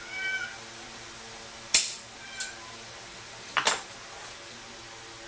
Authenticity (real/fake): real